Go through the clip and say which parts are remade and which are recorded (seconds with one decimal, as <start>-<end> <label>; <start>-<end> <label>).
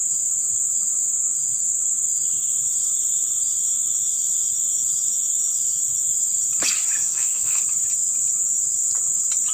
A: 0.0-7.0 recorded; 7.0-7.6 remade; 7.6-9.5 recorded